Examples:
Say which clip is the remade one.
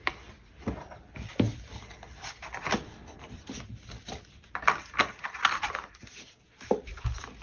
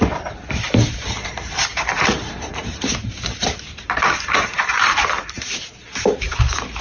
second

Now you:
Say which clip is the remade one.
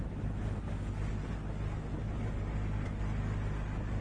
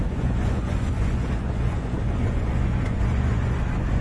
second